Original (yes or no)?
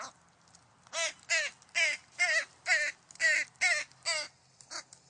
yes